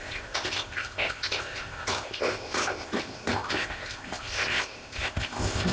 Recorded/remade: remade